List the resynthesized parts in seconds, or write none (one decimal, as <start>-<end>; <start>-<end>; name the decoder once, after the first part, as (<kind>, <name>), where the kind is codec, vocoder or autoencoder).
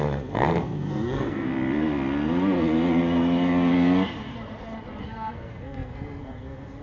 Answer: 0.0-1.5 (codec, SNAC); 5.0-6.8